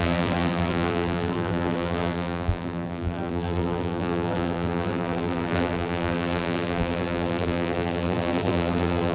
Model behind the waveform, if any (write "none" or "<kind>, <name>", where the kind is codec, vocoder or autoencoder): vocoder, BigVGAN v2